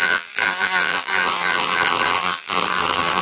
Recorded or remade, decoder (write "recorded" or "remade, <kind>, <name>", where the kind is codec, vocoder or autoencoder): remade, vocoder, BigVGAN v2